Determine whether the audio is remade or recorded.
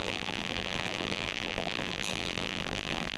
remade